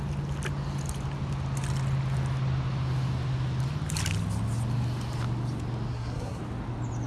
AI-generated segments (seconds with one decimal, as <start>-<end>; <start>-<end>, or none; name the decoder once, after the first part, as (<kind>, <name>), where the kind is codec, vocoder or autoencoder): 5.9-6.4 (codec, SNAC)